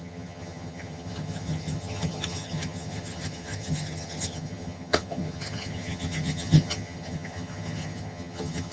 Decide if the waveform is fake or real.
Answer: fake